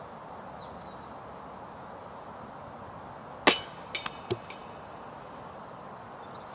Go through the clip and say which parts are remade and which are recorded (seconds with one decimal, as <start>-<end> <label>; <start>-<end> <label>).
0.0-6.5 recorded